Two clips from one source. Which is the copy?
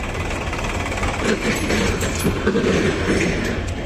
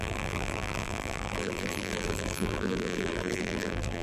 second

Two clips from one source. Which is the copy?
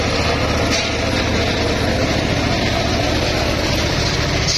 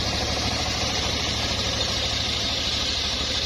second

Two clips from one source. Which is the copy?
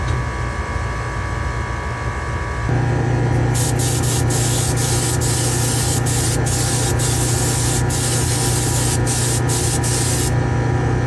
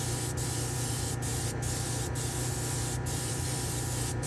second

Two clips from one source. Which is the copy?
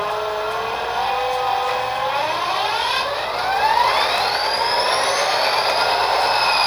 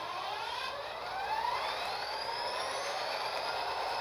second